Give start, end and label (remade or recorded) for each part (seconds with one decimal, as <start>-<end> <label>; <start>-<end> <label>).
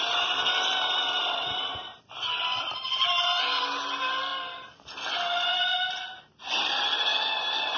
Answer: 0.0-7.8 recorded